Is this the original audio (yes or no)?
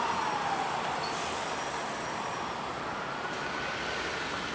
yes